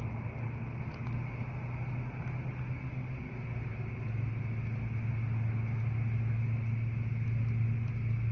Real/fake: real